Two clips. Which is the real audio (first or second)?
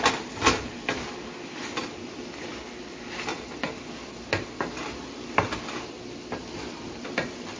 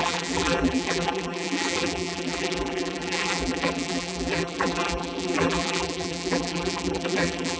first